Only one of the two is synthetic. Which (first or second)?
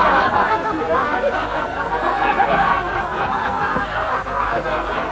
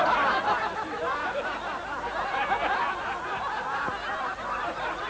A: first